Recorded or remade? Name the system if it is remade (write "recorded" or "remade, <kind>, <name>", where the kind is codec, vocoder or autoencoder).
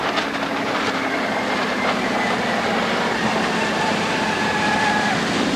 recorded